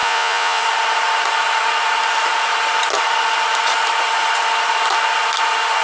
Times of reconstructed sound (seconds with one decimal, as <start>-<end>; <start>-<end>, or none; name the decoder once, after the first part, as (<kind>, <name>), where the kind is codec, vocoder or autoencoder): 0.0-0.6 (vocoder, Vocos)